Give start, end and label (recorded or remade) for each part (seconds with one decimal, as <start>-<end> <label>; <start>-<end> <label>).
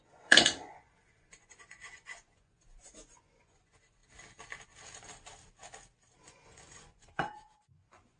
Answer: 0.0-4.0 remade; 4.0-6.2 recorded; 6.2-8.2 remade